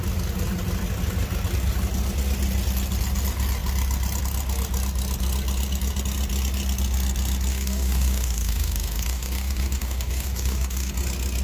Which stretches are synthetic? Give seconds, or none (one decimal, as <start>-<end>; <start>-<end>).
7.5-10.9